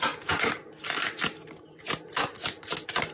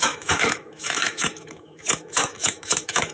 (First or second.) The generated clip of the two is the second